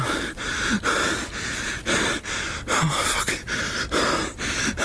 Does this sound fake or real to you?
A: real